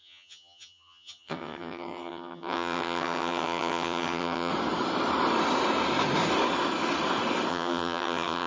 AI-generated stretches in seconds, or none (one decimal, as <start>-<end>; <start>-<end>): 0.0-4.5; 7.5-8.5